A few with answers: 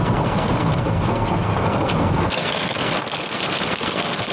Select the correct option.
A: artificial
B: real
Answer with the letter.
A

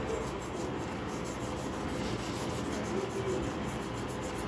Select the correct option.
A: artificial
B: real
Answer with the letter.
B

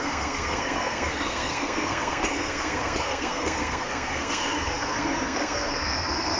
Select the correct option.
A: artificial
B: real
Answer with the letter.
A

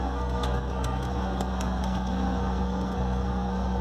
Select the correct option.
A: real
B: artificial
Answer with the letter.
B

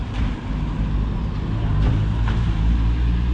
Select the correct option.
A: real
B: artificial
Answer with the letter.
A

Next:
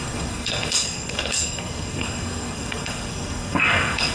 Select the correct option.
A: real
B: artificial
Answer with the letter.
B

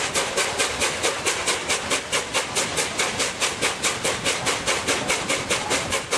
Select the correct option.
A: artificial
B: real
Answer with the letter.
B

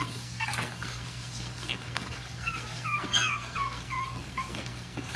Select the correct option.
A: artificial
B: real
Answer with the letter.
A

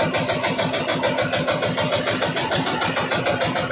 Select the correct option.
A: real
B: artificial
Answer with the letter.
A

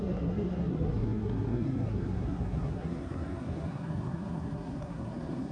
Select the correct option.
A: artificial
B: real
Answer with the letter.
A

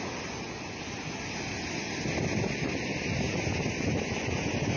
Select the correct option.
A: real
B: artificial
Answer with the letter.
A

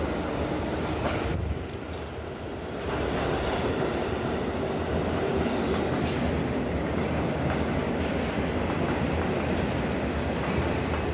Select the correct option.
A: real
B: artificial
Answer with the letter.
A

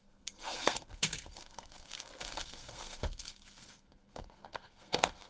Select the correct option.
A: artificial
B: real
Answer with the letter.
A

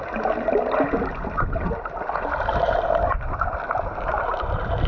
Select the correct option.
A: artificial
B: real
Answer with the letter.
B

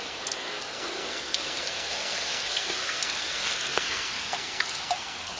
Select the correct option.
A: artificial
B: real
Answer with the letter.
A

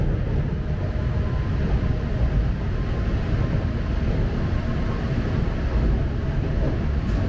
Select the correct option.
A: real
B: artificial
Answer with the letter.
A